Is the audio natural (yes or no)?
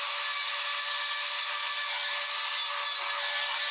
yes